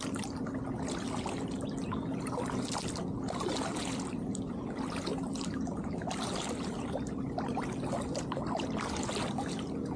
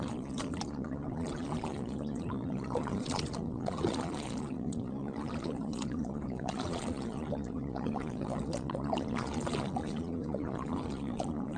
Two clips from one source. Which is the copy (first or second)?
second